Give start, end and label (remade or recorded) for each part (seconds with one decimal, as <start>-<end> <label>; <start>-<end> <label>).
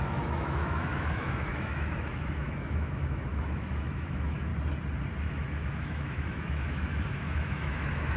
0.0-4.5 remade; 4.5-5.2 recorded; 5.2-8.2 remade